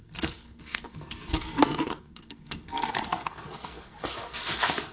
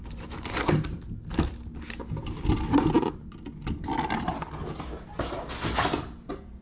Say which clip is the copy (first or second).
first